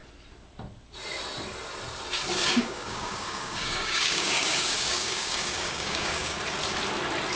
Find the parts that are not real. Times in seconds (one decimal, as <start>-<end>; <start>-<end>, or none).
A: 2.4-6.4